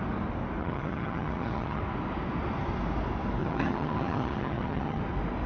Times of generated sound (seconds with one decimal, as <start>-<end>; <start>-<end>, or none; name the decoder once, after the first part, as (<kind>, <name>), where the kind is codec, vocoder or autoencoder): 0.6-1.8 (vocoder, HiFi-GAN); 3.4-5.0